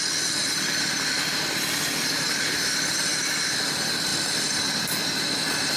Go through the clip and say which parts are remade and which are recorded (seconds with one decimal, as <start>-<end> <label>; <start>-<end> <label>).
0.0-2.1 recorded; 2.1-5.8 remade